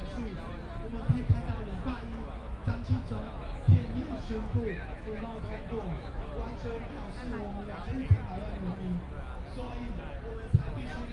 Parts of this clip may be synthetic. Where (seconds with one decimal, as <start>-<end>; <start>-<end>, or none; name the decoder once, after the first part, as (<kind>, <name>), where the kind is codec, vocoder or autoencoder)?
1.9-6.3 (autoencoder, DAC-VAE)